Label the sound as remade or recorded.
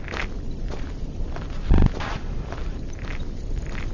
recorded